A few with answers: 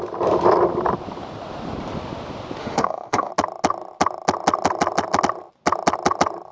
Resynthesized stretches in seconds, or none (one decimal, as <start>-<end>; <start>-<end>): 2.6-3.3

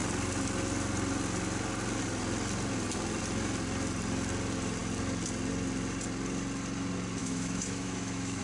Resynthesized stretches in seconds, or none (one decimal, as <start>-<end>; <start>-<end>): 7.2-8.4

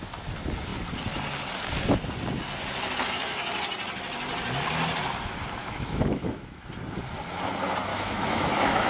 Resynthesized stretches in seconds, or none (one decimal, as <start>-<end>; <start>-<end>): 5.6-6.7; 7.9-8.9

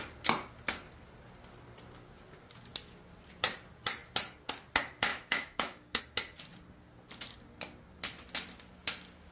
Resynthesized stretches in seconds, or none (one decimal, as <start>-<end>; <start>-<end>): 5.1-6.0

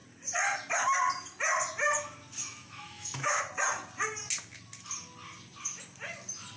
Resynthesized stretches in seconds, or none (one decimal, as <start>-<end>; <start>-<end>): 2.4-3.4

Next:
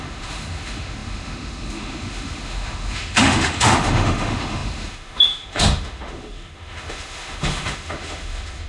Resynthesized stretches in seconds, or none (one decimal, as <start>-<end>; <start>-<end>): 0.0-8.7